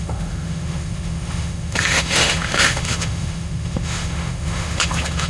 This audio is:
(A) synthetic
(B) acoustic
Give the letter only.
A